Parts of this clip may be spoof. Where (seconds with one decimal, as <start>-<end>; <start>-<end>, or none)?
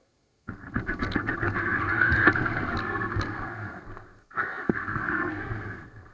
0.0-6.1